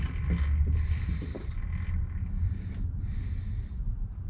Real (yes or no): yes